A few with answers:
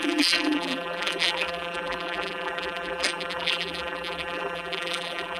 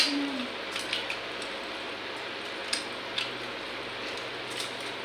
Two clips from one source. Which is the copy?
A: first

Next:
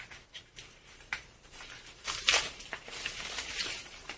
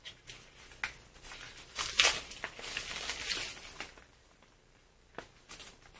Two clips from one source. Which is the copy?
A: first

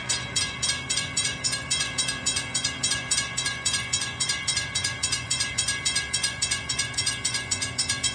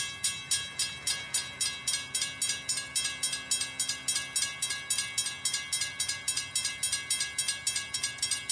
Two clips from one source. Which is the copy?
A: first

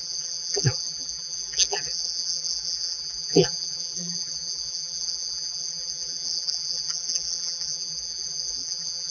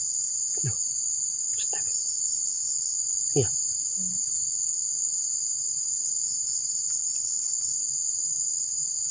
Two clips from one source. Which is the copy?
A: first